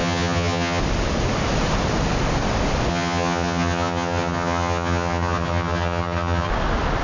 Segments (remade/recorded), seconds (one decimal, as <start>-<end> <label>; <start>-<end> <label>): 0.0-0.8 remade; 0.8-2.9 recorded; 2.9-6.5 remade; 6.5-7.0 recorded